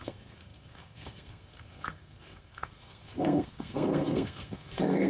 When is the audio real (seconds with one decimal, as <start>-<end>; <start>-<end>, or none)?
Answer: none